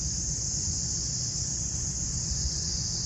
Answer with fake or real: fake